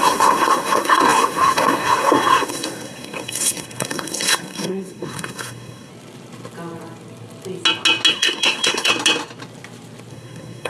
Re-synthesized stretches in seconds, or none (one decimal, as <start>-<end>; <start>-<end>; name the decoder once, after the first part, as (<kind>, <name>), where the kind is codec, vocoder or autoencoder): 0.0-5.9 (codec, SNAC); 8.1-8.9; 10.1-10.7

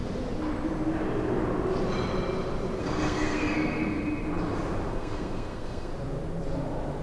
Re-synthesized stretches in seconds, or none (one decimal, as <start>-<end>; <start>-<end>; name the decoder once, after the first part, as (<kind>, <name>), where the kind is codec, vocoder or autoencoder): 2.8-3.9 (codec, SNAC); 4.9-5.9